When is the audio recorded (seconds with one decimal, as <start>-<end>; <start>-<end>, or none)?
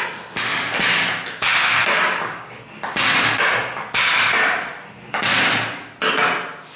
0.0-1.8; 2.6-6.8